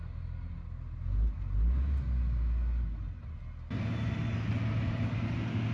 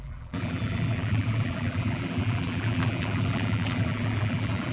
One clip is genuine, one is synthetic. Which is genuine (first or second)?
first